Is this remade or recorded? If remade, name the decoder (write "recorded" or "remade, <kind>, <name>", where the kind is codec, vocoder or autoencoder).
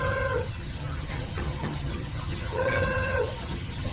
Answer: remade, vocoder, HiFi-GAN